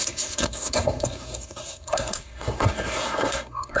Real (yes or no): no